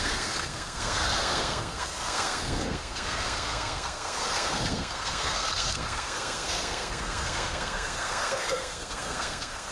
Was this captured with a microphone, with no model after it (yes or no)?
no